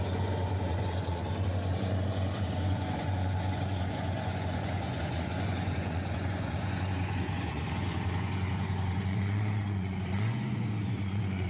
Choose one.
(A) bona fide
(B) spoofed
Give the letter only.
B